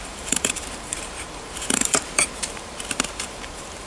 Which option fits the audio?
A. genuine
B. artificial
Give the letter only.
B